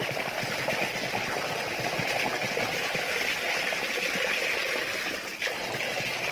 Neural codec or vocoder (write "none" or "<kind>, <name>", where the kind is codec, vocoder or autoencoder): none